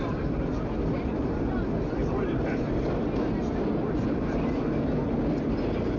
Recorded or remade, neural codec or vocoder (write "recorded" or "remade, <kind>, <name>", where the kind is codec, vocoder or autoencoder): recorded